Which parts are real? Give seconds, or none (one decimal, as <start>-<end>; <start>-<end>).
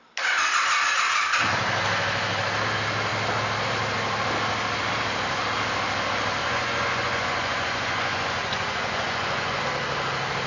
0.0-6.4; 9.6-10.5